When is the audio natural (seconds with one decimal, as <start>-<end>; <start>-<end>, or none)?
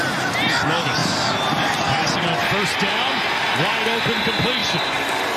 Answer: 0.0-5.4